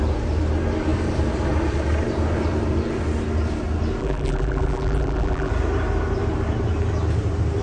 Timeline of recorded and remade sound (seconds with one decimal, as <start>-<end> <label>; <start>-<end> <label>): 0.0-4.0 recorded; 4.0-5.5 remade; 5.5-7.6 recorded